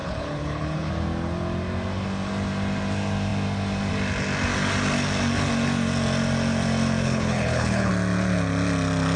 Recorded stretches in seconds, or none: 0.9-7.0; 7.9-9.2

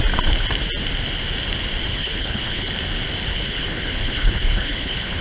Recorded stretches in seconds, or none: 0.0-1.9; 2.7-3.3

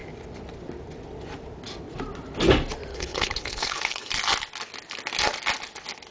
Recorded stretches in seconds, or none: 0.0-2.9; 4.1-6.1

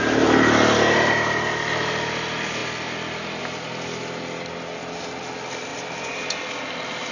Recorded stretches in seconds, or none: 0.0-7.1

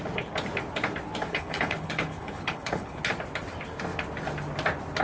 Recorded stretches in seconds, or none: 0.0-1.3; 3.0-5.0

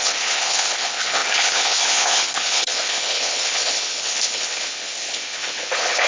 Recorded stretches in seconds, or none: none